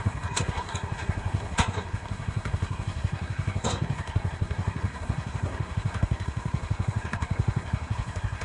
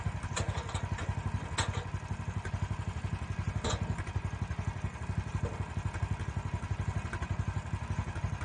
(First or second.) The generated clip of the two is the first